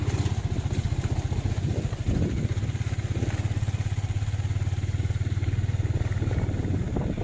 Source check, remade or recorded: recorded